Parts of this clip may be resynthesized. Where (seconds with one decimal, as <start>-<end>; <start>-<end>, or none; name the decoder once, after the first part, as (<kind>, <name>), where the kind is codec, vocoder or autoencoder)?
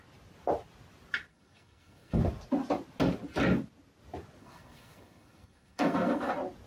1.3-2.2 (codec, SNAC); 4.4-6.3